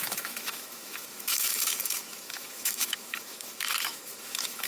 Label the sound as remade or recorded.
remade